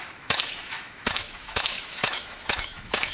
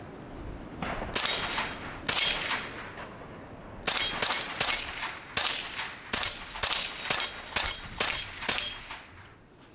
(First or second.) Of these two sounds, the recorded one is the second